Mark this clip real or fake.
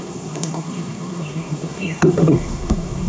fake